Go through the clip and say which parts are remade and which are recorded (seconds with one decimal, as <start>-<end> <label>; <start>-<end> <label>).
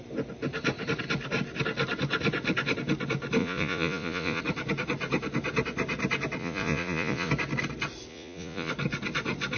0.0-3.4 recorded; 3.4-4.4 remade; 4.4-6.4 recorded; 6.4-7.3 remade; 7.3-8.1 recorded; 8.1-8.7 remade; 8.7-9.6 recorded